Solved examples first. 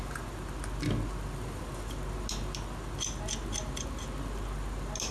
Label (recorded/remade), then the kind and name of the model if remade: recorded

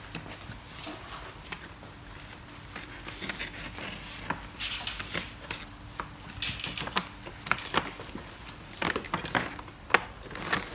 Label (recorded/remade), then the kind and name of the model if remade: recorded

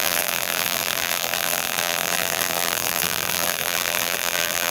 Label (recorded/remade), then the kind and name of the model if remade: remade, vocoder, BigVGAN v2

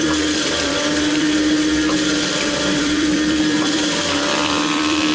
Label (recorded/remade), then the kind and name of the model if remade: remade, vocoder, BigVGAN v2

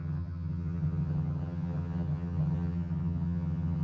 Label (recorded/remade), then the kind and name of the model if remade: remade, vocoder, HiFi-GAN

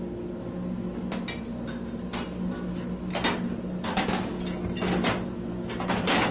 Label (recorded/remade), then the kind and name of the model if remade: recorded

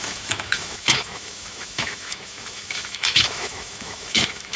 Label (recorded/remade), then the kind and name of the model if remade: remade, autoencoder, DAC-VAE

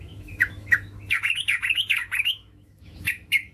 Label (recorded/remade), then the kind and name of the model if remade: remade, autoencoder, DAC-VAE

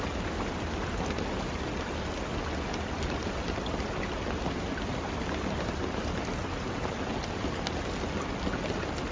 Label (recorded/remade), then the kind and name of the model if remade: recorded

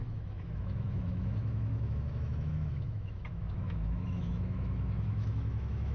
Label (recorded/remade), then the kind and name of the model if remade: remade, autoencoder, DAC-VAE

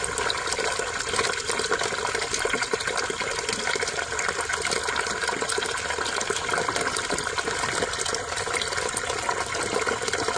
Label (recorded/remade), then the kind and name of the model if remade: recorded